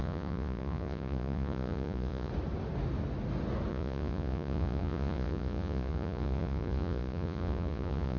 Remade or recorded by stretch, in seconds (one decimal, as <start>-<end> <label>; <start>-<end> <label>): 0.0-2.3 remade; 2.3-3.7 recorded; 3.7-8.2 remade